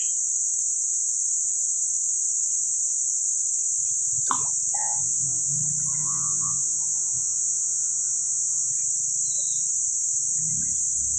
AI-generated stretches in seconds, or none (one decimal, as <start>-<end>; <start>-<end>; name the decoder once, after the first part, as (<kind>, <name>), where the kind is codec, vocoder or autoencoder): 4.8-5.6 (vocoder, Vocos); 6.0-8.7